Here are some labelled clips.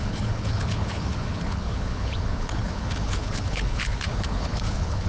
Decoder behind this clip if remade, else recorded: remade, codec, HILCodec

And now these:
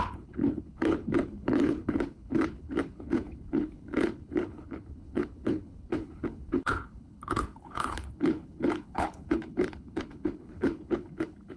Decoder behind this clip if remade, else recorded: remade, codec, HILCodec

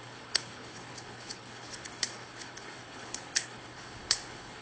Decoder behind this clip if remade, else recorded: remade, codec, HILCodec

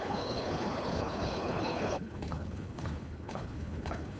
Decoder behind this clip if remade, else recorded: remade, codec, HILCodec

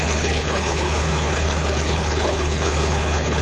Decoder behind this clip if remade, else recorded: remade, codec, HILCodec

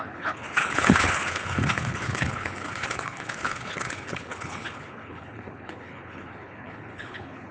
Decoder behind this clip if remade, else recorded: remade, codec, HILCodec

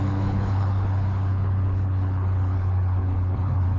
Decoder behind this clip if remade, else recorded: remade, codec, HILCodec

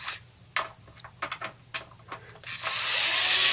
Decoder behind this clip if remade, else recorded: recorded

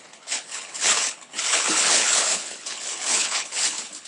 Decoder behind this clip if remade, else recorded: remade, codec, HILCodec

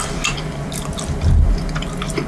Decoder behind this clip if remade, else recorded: recorded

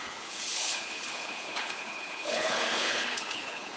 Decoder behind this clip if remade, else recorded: remade, codec, HILCodec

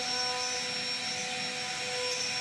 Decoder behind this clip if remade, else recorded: recorded